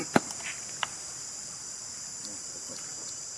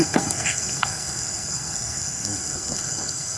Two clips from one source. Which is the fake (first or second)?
second